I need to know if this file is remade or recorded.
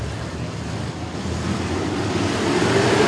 recorded